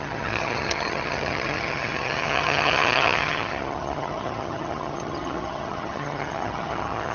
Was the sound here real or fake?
fake